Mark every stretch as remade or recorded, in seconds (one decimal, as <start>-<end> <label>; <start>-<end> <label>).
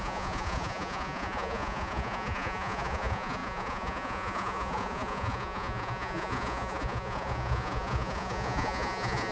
0.0-9.3 remade